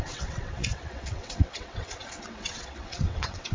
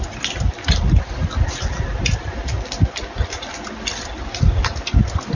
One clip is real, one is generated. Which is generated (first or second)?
first